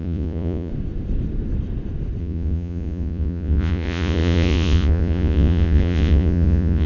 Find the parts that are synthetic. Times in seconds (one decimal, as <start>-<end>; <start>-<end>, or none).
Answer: 0.0-0.7; 2.2-6.9